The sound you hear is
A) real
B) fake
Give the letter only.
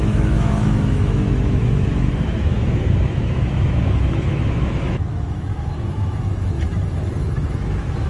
B